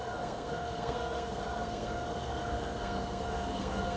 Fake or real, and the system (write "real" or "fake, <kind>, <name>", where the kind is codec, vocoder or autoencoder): fake, codec, SNAC